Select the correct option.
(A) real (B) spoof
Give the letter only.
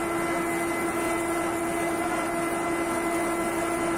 A